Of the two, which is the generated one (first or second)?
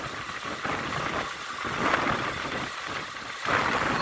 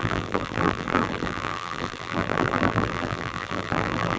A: second